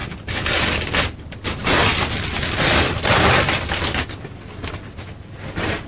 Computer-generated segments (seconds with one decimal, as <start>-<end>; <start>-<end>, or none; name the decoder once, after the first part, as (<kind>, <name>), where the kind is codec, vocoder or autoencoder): none